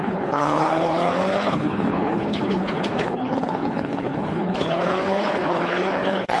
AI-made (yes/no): yes